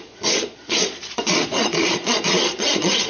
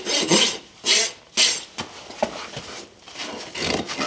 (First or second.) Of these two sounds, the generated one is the first